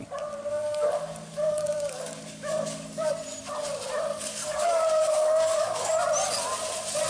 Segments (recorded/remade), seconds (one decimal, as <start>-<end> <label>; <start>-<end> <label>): 0.0-0.5 recorded; 0.5-3.1 remade; 3.1-4.1 recorded; 4.1-5.9 remade; 5.9-7.1 recorded